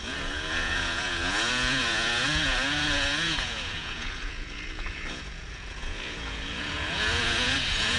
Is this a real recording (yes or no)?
no